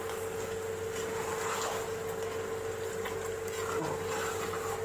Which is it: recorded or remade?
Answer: recorded